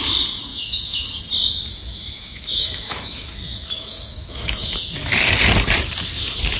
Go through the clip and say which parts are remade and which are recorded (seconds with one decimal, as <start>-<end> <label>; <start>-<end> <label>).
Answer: 0.0-0.5 recorded; 0.5-1.2 remade; 1.2-1.7 recorded; 1.7-4.9 remade; 4.9-6.6 recorded